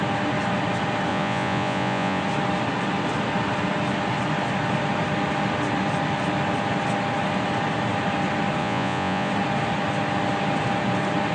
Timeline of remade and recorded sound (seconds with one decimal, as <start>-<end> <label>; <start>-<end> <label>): 0.0-1.1 recorded; 1.1-2.2 remade; 2.2-8.6 recorded; 8.6-9.3 remade; 9.3-11.3 recorded